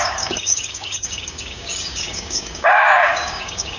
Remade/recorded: remade